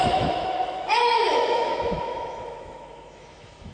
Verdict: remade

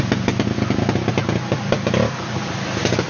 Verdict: recorded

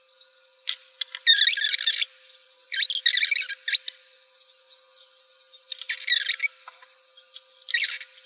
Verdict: recorded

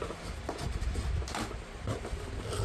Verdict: recorded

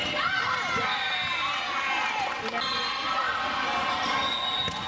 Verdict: recorded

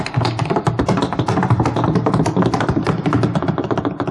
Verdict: recorded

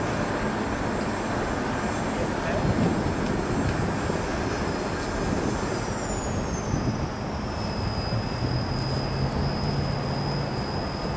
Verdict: recorded